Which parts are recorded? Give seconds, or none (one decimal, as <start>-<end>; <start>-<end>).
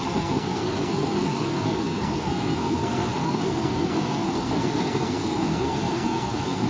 none